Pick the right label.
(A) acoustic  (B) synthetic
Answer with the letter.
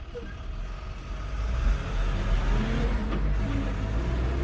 A